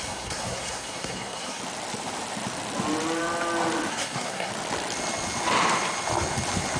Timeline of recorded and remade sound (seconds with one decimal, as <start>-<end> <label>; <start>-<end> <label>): 0.0-1.6 remade; 1.6-3.9 recorded; 3.9-4.5 remade; 4.5-6.8 recorded